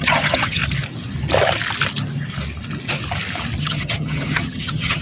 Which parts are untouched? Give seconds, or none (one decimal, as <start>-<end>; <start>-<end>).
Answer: 0.6-3.6